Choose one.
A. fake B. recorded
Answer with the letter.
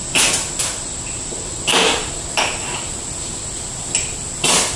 B